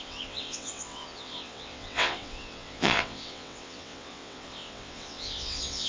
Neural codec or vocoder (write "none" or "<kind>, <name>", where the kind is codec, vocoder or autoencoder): vocoder, WaveNeXt